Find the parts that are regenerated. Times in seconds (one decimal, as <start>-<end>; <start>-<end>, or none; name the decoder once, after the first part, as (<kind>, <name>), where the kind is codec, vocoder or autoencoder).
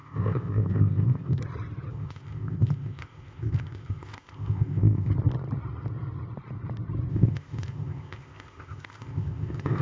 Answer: 0.0-1.4 (codec, ZipCodec); 1.9-5.1; 7.1-9.8